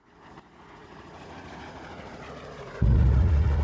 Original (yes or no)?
no